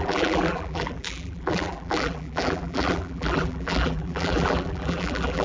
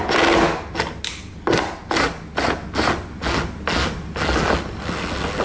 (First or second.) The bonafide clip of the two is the second